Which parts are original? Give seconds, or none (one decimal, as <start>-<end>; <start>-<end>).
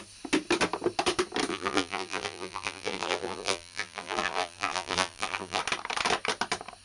0.0-1.5; 5.6-6.8